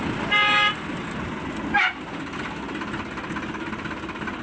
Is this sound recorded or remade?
recorded